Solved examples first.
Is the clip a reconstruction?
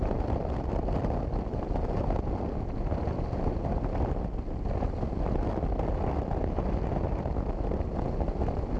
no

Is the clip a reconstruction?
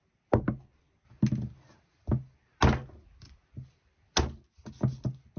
no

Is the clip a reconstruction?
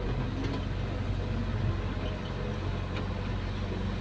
no